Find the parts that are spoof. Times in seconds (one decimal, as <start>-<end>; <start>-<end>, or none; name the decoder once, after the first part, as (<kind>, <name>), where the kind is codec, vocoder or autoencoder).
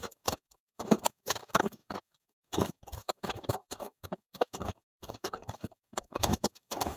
0.0-7.0 (codec, DAC)